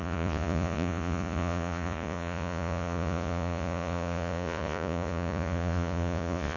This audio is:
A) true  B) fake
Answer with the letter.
B